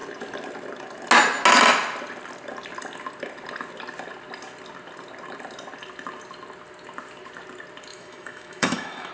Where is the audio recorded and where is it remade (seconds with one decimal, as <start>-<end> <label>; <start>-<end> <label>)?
0.0-7.9 recorded; 7.9-9.1 remade